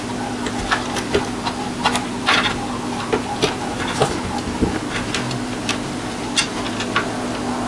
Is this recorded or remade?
recorded